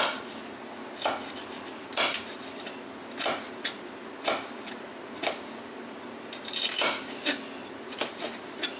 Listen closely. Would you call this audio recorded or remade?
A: remade